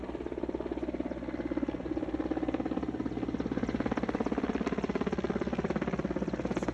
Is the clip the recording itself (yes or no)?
yes